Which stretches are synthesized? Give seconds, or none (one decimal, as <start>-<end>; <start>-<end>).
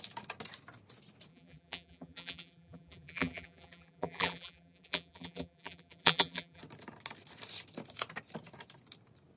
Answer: 1.3-6.6